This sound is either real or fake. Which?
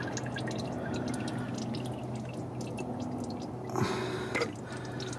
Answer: real